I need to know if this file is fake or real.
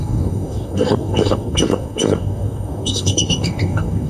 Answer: fake